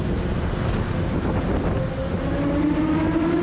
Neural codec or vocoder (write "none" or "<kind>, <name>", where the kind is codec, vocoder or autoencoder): none